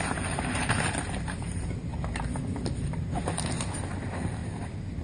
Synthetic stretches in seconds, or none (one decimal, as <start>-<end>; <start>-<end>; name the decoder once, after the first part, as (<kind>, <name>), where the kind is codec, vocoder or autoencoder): 0.0-1.9 (vocoder, BigVGAN v2); 3.7-4.4